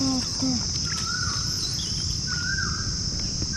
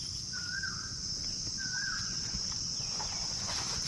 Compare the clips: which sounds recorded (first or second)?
first